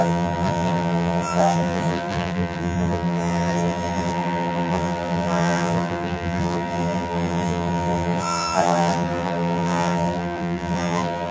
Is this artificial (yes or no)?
yes